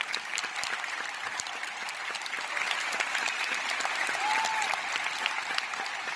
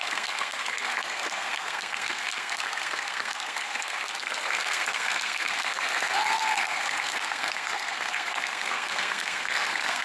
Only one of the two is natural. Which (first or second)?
first